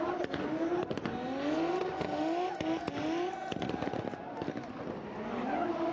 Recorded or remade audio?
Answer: recorded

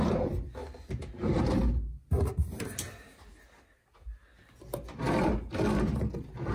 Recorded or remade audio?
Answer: recorded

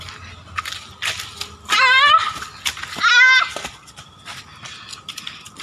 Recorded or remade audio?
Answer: recorded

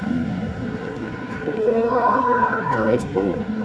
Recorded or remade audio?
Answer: remade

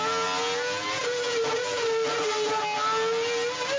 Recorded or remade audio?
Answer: recorded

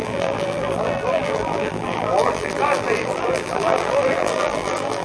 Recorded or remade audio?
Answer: remade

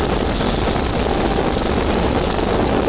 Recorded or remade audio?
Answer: recorded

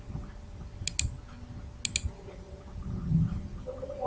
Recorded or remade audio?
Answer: recorded